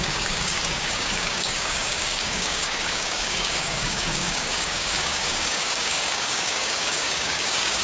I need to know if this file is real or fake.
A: fake